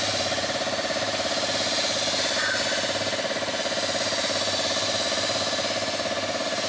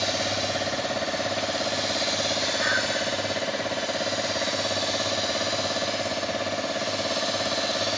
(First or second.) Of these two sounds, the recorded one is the second